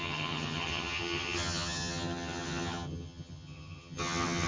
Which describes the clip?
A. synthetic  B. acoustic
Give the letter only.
A